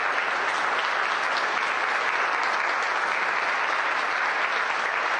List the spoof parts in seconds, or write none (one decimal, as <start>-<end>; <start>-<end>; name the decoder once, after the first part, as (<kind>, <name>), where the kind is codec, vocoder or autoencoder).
none